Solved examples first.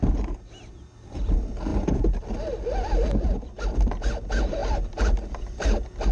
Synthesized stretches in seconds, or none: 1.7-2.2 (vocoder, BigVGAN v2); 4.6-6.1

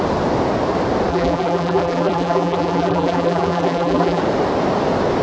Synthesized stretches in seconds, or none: 1.1-4.2 (vocoder, BigVGAN v2)

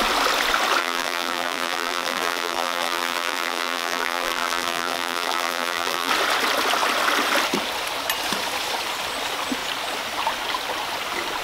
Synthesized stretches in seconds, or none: 0.8-6.1 (vocoder, BigVGAN v2)

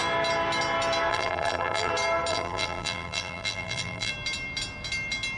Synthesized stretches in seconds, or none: 1.1-1.9 (vocoder, BigVGAN v2); 2.3-4.1

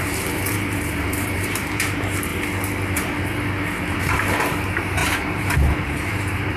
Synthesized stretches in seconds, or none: 0.0-2.3 (vocoder, BigVGAN v2); 4.0-6.6

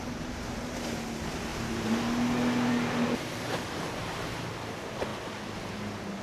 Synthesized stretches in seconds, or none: 1.5-2.0 (vocoder, BigVGAN v2)

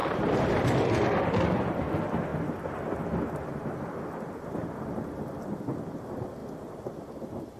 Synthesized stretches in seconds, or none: 0.0-1.8 (vocoder, BigVGAN v2)

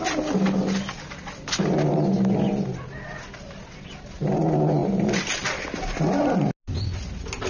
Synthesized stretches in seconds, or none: 4.8-5.3 (vocoder, BigVGAN v2)